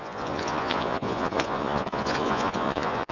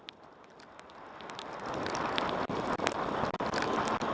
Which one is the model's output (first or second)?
first